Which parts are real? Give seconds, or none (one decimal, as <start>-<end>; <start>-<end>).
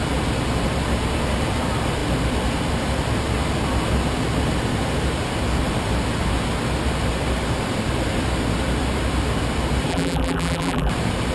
0.0-9.9; 10.9-11.3